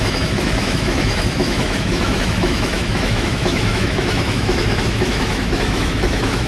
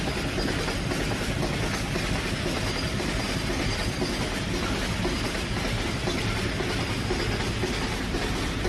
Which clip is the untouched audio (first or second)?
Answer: second